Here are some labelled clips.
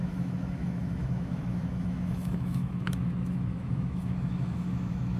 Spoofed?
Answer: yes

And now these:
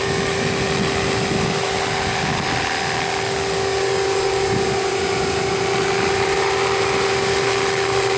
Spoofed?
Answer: no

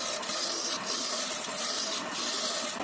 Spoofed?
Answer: no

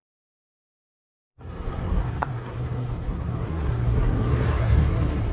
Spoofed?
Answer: yes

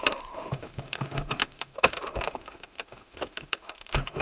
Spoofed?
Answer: yes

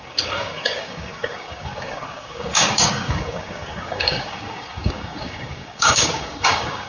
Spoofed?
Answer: yes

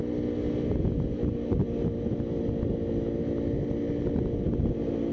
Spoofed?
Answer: no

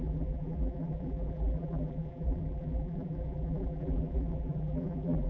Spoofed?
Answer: yes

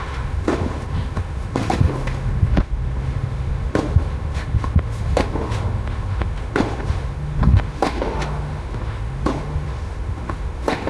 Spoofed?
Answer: yes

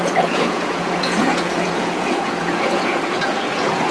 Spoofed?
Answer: yes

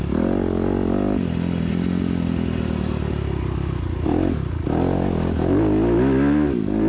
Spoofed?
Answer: no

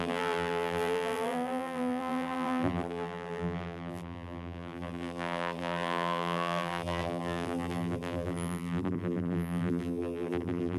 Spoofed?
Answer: yes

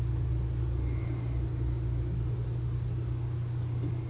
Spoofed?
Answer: no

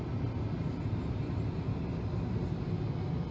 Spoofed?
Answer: no